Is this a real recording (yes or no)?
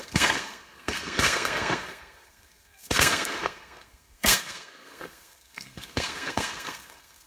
no